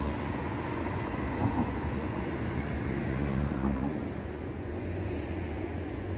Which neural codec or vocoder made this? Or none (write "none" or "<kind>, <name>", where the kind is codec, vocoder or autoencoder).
vocoder, Vocos